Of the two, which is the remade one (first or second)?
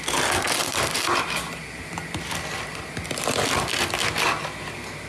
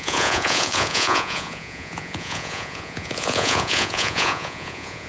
second